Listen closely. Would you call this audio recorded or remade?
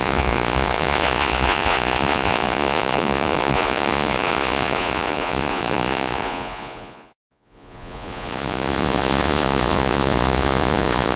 remade